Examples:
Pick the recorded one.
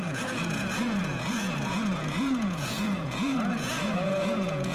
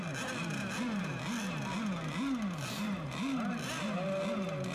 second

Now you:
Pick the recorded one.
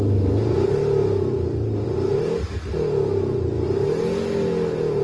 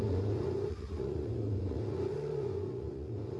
first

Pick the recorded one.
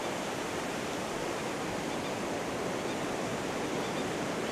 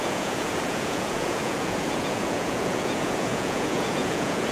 first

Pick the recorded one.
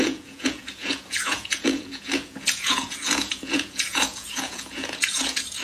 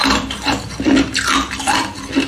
second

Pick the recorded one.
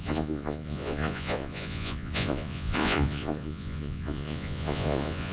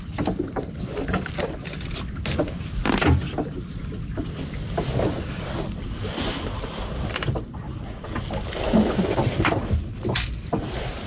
second